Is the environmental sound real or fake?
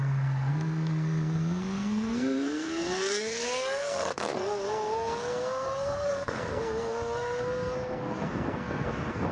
fake